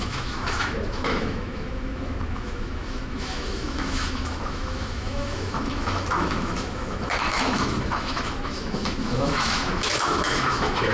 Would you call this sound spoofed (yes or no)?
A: yes